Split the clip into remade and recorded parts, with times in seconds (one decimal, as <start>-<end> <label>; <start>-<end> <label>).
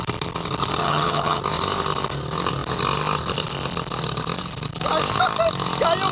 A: 0.0-0.8 recorded; 0.8-1.4 remade; 1.4-6.1 recorded